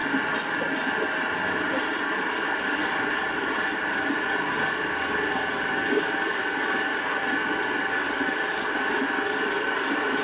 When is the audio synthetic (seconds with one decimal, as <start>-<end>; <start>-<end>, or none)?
2.2-10.2